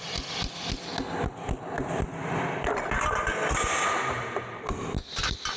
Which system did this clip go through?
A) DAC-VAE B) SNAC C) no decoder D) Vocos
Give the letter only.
C